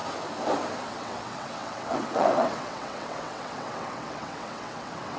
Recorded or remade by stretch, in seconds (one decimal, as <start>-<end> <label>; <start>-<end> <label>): 0.0-0.9 recorded; 0.9-5.2 remade